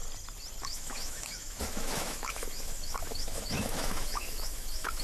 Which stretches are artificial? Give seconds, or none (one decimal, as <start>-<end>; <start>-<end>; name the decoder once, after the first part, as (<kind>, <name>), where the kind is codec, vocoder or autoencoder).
0.6-5.0 (autoencoder, DAC-VAE)